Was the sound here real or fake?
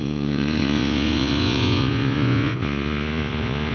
fake